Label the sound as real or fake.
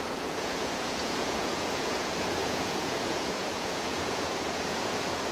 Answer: fake